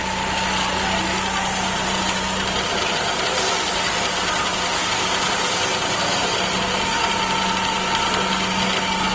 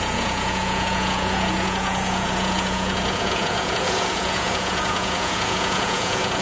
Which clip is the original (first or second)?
first